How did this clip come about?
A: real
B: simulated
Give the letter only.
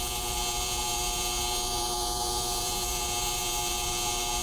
B